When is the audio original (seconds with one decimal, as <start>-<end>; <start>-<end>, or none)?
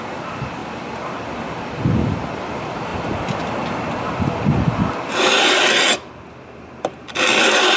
none